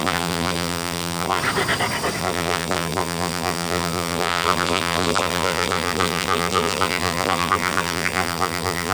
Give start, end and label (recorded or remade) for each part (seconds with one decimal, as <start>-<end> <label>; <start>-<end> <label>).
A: 0.0-1.4 remade; 1.4-2.2 recorded; 2.2-8.9 remade